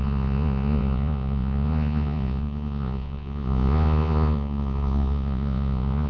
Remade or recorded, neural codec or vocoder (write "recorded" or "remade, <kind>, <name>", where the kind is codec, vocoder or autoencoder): remade, vocoder, Vocos